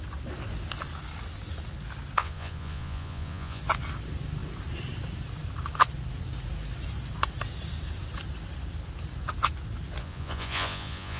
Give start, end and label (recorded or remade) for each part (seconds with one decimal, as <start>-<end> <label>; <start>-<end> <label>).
0.0-2.2 recorded; 2.2-3.6 remade; 3.6-10.0 recorded; 10.0-11.2 remade